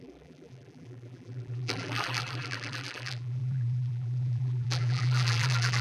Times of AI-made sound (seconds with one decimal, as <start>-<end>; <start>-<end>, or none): 0.0-5.8